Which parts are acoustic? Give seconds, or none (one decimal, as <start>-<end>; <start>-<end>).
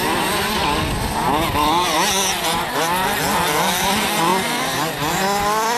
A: 0.0-4.3; 5.1-5.8